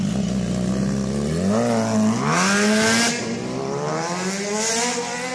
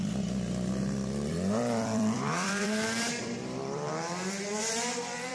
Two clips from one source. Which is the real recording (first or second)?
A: first